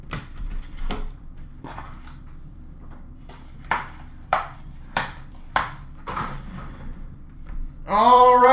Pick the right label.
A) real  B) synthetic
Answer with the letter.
B